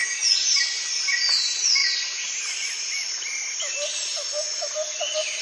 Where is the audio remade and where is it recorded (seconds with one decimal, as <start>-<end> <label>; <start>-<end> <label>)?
0.0-5.4 recorded

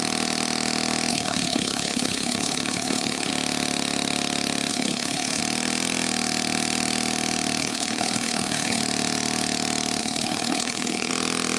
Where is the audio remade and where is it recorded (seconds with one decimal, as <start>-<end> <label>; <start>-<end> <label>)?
0.0-1.1 recorded; 1.1-3.3 remade; 3.3-4.7 recorded; 4.7-5.4 remade; 5.4-7.6 recorded; 7.6-8.8 remade; 8.8-10.0 recorded; 10.0-11.1 remade; 11.1-11.6 recorded

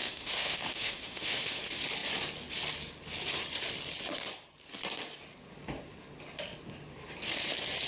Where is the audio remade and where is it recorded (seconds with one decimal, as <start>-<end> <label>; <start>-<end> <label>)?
0.0-1.6 remade; 1.6-7.9 recorded

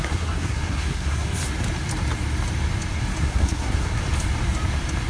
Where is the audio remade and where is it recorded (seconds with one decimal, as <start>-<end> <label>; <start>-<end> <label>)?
0.0-1.4 remade; 1.4-3.2 recorded; 3.2-4.0 remade; 4.0-5.1 recorded